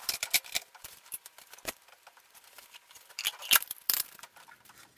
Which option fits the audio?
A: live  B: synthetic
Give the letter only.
B